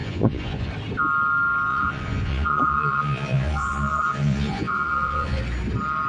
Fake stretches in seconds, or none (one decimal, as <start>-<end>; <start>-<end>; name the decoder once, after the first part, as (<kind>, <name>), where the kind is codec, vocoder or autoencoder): 0.0-0.7 (vocoder, Vocos); 1.7-5.4